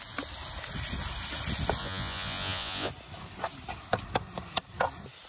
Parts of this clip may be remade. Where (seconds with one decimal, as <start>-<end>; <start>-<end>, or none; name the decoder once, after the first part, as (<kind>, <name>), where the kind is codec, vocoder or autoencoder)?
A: 1.8-2.9 (vocoder, Vocos)